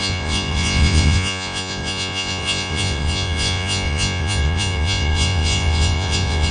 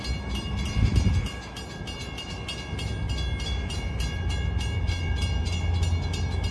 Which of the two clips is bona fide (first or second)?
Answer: second